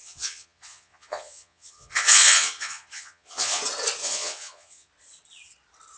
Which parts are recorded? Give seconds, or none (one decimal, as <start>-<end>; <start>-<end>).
3.6-4.0; 4.9-6.0